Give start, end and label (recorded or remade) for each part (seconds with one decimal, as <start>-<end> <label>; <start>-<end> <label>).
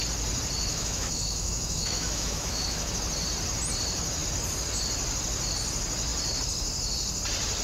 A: 0.0-0.7 recorded; 0.7-2.9 remade; 2.9-7.6 recorded